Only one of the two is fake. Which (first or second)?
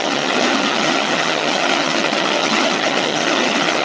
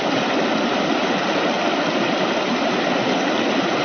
first